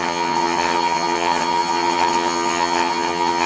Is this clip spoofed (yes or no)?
yes